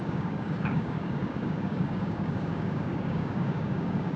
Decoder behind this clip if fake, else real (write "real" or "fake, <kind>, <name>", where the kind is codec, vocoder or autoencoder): fake, codec, DAC